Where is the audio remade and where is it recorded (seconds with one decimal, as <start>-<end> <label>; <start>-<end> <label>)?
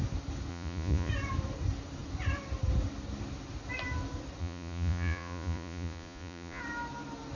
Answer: 0.0-0.5 recorded; 0.5-1.1 remade; 1.1-4.4 recorded; 4.4-6.6 remade; 6.6-7.4 recorded